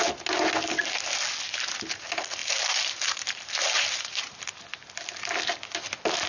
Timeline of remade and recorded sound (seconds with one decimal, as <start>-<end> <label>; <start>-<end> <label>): 0.0-2.4 recorded; 2.4-4.5 remade; 4.5-6.3 recorded